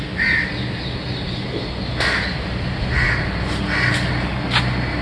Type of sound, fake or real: real